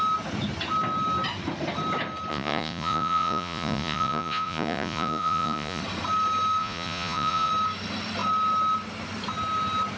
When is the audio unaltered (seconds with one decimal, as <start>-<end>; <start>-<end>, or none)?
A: 0.0-2.3; 5.8-6.6; 7.5-10.0